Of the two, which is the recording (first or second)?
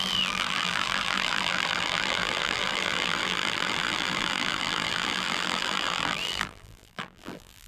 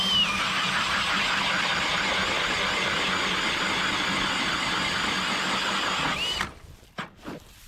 second